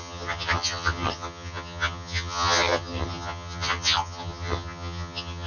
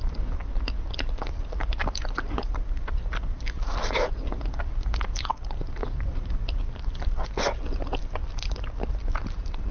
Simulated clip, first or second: first